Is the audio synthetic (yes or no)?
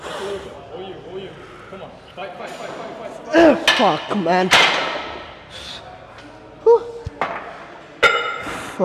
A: no